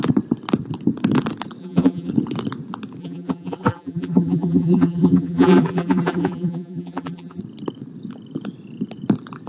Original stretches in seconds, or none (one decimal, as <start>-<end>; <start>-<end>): 0.0-1.6; 2.1-3.0; 7.4-9.5